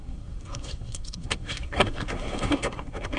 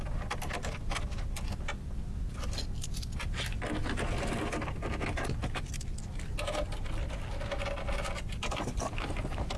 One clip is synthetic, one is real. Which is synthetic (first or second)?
first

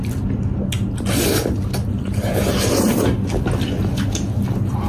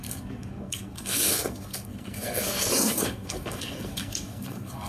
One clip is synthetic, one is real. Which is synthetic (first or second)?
second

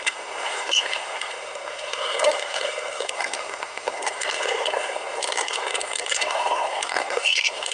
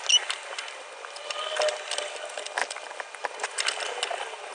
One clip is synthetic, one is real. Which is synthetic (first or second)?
first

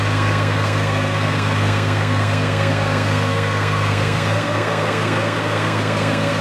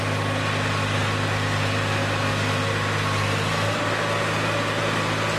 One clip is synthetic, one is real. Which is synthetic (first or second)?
first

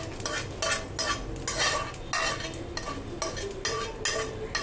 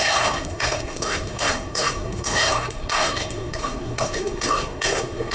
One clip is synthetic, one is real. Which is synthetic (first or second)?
second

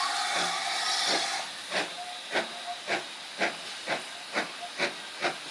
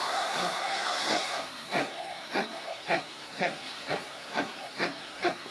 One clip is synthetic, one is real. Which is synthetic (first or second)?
second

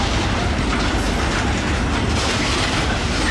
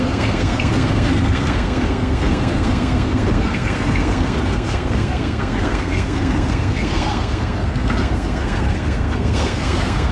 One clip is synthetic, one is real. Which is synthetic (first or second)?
second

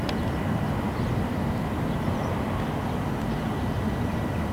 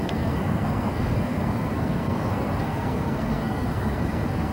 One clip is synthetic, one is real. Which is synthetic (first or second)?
second